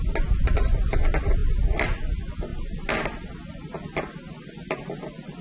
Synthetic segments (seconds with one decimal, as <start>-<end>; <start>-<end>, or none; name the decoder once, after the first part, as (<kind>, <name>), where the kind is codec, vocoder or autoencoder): none